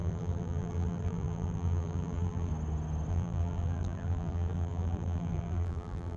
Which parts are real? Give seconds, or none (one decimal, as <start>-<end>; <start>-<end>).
2.5-3.1